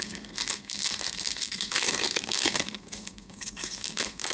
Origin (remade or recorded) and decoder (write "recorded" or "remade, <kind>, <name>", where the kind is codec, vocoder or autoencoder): remade, codec, SNAC